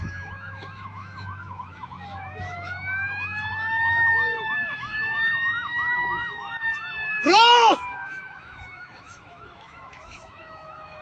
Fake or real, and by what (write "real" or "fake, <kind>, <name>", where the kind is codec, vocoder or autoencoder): fake, autoencoder, DAC-VAE